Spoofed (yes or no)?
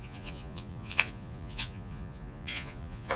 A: yes